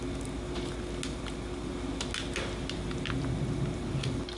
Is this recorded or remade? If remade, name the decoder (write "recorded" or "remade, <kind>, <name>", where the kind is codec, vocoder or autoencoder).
recorded